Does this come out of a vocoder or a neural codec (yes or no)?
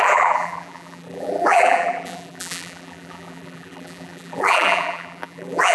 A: yes